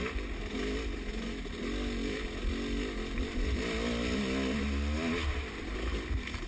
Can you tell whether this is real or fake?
real